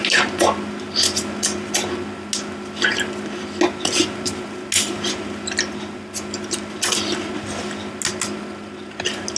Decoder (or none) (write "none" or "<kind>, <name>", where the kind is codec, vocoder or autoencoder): none